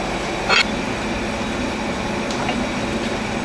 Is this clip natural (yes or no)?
yes